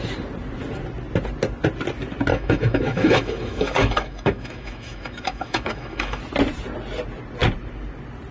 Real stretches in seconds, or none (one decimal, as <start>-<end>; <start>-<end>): 0.0-2.3; 6.2-8.3